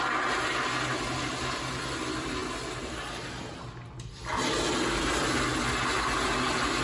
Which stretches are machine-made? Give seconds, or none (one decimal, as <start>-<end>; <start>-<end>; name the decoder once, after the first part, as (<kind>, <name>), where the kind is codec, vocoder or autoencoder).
none